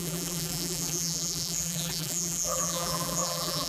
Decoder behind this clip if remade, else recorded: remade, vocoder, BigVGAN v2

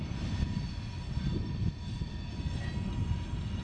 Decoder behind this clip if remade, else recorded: recorded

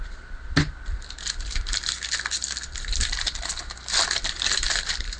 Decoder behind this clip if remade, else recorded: recorded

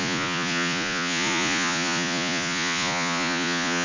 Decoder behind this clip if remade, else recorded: remade, vocoder, Vocos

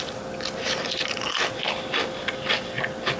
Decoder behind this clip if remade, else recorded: recorded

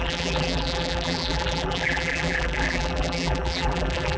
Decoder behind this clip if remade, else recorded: remade, vocoder, BigVGAN v2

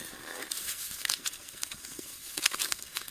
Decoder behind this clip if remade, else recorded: remade, codec, SNAC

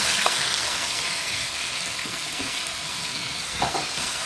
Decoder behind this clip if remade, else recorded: remade, codec, SNAC